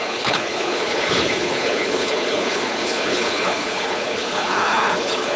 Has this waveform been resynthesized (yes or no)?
yes